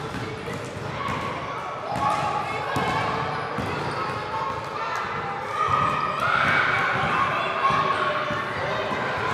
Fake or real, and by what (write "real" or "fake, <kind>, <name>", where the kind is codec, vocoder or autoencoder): real